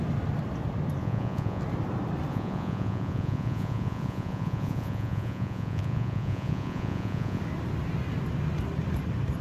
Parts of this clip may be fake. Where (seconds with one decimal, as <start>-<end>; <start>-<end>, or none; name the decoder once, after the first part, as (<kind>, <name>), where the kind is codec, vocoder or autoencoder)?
1.0-1.6 (vocoder, Vocos); 2.3-7.4